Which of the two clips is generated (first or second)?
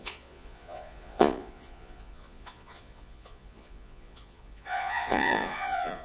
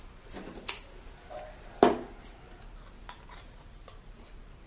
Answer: first